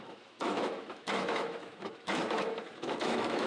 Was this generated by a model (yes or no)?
yes